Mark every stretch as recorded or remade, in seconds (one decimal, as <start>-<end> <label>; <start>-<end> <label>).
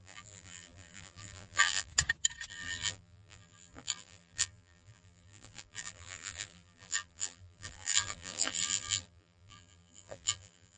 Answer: 0.0-1.9 remade; 1.9-2.5 recorded; 2.5-10.8 remade